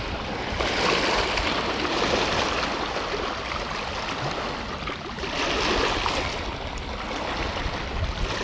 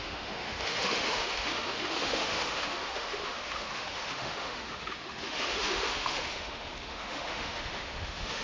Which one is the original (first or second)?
first